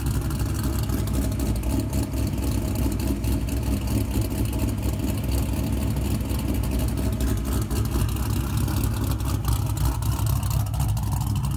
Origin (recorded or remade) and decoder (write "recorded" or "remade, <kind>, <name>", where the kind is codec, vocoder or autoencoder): recorded